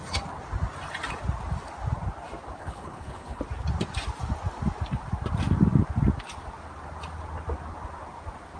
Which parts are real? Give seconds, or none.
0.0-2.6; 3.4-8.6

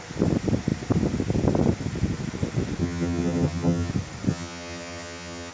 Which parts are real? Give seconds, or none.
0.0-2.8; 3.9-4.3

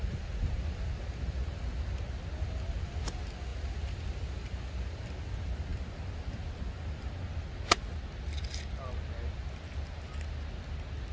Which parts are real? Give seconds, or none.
0.0-11.1